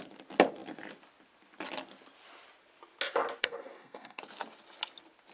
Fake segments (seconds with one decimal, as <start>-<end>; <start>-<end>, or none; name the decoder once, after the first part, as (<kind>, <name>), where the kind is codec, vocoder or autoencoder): 3.4-4.2 (codec, SNAC)